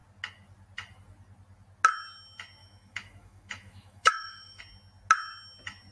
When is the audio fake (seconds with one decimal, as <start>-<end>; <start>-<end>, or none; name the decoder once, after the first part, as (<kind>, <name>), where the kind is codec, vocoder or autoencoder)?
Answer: 2.6-4.6 (autoencoder, DAC-VAE)